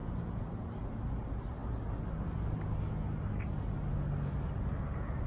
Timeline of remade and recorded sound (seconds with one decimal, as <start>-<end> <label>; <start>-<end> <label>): 0.0-0.6 remade; 0.6-5.3 recorded